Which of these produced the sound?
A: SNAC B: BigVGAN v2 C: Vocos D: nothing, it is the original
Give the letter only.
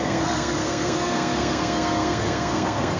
A